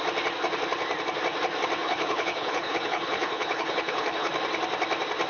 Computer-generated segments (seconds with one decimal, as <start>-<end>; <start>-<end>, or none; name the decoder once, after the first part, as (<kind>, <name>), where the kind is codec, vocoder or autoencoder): 1.8-4.3 (codec, HILCodec)